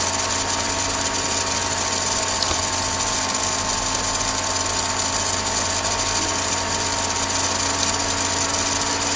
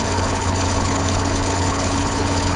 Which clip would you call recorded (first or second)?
first